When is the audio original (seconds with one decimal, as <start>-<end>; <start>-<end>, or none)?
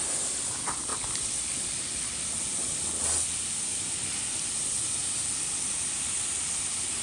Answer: 0.0-7.0